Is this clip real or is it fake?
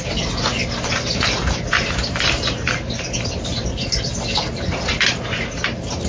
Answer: real